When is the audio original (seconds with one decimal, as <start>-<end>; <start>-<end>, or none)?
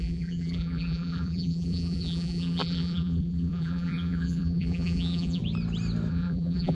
5.4-6.1